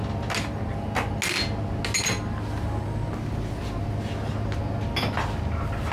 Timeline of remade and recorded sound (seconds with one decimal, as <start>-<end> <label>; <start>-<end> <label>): 0.0-5.9 recorded